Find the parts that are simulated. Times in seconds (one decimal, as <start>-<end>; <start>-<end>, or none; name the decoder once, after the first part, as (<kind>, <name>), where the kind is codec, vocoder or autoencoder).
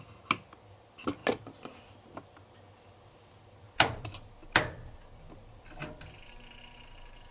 none